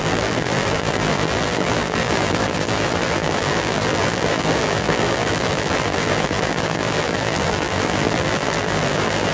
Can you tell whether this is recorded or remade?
remade